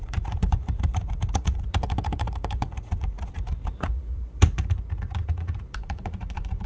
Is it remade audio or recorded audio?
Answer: remade